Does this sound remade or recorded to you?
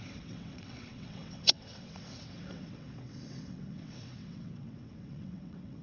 remade